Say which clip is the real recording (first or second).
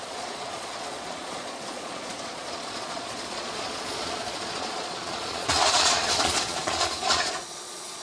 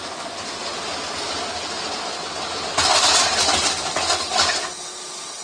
second